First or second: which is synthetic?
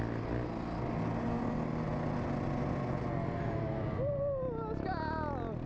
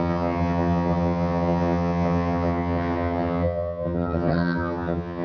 second